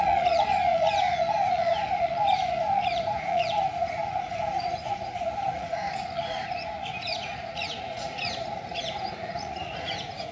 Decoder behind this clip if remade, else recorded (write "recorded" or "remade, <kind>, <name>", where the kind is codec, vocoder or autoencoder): remade, vocoder, Vocos